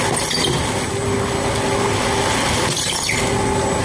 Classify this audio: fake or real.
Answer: real